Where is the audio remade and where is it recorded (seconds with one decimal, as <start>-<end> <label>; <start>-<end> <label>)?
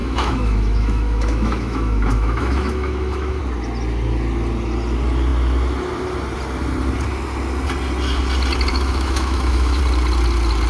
0.0-3.4 remade; 3.4-8.7 recorded; 8.7-9.8 remade; 9.8-10.7 recorded